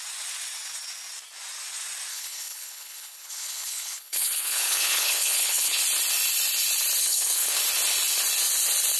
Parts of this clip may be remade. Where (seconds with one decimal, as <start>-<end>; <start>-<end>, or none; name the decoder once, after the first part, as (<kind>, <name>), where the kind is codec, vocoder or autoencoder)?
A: 2.1-5.8 (codec, HILCodec); 7.0-7.6